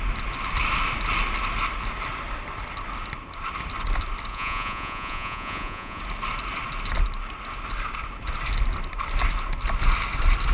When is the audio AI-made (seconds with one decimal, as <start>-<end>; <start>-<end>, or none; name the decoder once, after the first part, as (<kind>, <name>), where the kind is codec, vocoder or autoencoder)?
4.3-6.0 (vocoder, Vocos)